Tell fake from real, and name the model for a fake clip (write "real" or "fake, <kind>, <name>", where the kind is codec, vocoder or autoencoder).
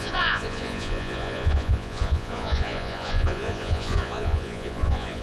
fake, vocoder, Vocos